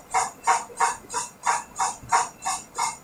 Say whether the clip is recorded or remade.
recorded